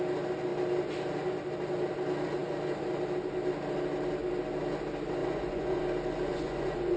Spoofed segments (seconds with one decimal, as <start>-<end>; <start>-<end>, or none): 5.2-5.8; 6.3-7.0